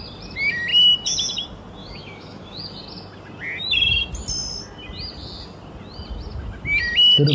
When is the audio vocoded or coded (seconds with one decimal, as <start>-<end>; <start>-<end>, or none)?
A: 1.8-2.6